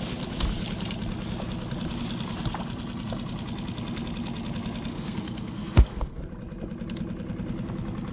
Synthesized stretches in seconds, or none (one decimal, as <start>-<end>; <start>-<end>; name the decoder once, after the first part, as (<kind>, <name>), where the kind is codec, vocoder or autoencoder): 4.9-6.2 (codec, SNAC)